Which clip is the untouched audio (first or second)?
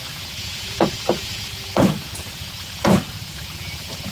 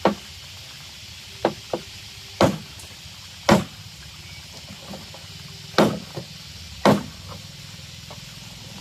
second